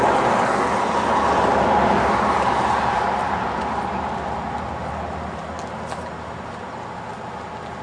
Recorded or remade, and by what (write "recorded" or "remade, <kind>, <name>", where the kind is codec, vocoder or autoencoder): recorded